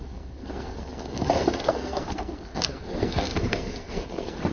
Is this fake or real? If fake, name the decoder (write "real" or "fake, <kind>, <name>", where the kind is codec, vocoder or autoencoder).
fake, codec, SNAC